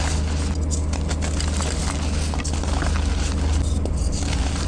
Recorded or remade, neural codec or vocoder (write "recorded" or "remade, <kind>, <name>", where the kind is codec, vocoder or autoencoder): recorded